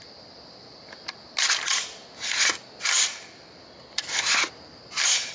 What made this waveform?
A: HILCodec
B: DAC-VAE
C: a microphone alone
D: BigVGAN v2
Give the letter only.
C